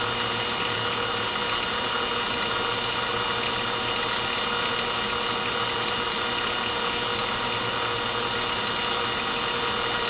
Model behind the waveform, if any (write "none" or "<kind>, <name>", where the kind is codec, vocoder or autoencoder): none